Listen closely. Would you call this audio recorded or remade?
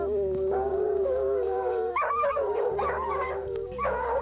remade